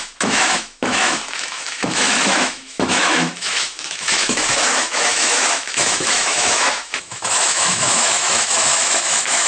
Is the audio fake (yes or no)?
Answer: yes